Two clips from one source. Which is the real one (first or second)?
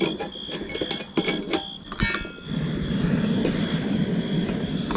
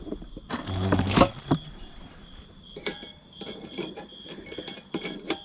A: first